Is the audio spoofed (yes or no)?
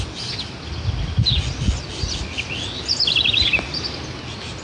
no